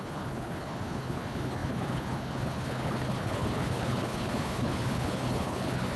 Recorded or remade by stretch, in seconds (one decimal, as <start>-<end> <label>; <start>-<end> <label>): 0.0-6.0 remade